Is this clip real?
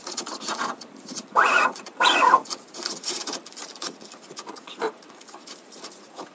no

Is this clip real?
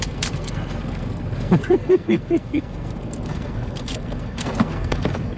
no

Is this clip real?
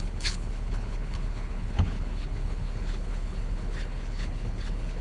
no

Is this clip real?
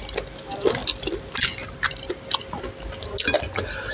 yes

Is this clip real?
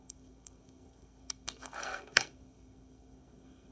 no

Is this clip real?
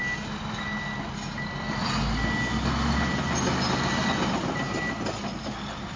yes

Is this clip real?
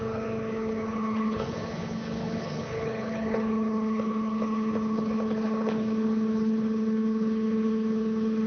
no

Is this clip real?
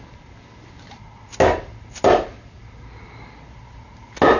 yes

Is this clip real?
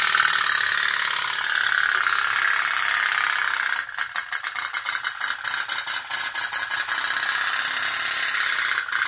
yes